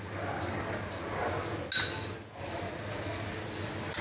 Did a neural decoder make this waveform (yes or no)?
no